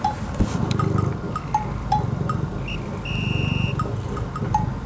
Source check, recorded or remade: recorded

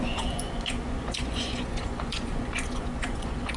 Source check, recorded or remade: remade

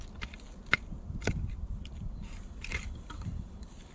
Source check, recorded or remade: recorded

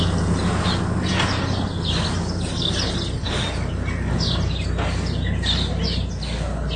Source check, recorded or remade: recorded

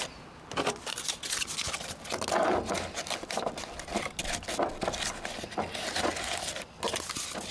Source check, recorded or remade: recorded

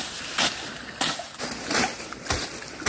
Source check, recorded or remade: recorded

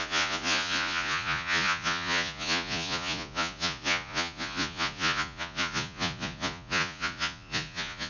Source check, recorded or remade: remade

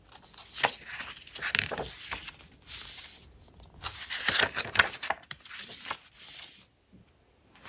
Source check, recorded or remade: recorded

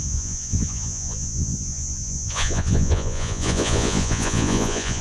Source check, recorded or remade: remade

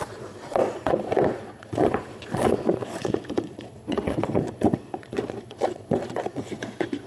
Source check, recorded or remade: remade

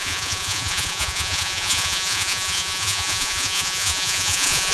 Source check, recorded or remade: remade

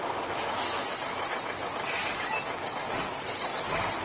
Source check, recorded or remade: recorded